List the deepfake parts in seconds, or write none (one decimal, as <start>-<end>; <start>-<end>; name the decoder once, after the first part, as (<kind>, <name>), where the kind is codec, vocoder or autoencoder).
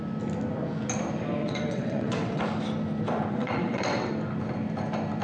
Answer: 1.4-2.4 (vocoder, WaveNeXt); 3.3-4.1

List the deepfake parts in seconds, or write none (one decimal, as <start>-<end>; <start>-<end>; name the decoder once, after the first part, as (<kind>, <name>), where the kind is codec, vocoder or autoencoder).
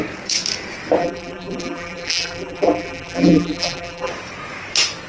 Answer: 1.0-4.1 (vocoder, BigVGAN v2)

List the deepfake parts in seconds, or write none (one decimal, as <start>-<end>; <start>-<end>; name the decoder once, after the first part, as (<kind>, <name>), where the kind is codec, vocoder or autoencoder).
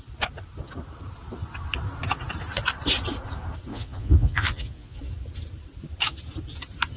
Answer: 3.7-5.0 (vocoder, Vocos)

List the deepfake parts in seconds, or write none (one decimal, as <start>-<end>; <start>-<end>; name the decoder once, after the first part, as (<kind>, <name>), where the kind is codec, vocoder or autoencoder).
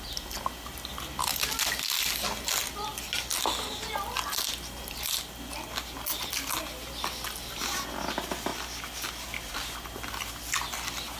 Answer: none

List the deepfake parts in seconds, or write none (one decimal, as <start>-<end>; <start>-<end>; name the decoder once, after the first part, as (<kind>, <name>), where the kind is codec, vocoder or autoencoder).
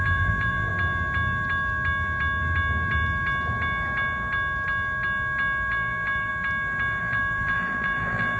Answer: 0.0-0.7 (vocoder, BigVGAN v2); 5.7-6.3; 7.0-8.4